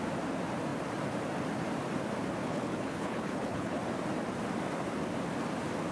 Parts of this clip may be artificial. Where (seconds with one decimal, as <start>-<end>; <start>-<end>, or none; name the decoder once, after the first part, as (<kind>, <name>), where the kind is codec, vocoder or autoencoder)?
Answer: 2.4-3.8 (codec, HILCodec)